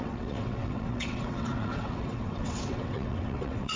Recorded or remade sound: remade